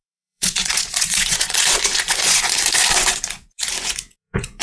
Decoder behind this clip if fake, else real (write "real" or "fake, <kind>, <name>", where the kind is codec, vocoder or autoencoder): fake, vocoder, Vocos